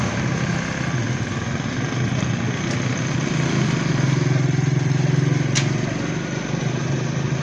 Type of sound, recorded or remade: recorded